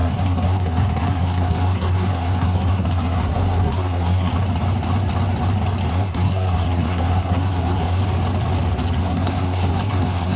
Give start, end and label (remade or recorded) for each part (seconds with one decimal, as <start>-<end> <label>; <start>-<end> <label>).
0.0-4.3 remade; 4.3-5.9 recorded; 5.9-8.0 remade; 8.0-9.0 recorded; 9.0-10.4 remade